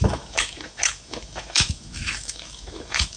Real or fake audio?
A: fake